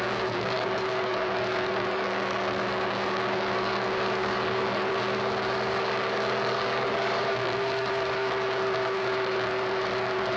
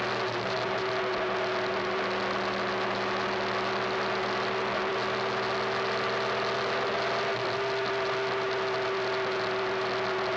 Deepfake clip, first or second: first